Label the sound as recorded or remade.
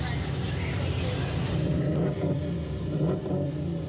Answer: recorded